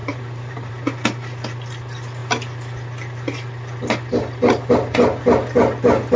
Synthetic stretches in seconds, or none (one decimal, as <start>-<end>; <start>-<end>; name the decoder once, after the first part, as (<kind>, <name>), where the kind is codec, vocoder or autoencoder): 0.0-0.7 (vocoder, BigVGAN v2)